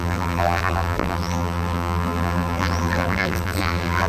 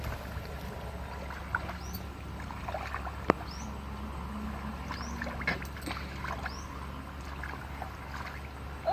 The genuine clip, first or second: second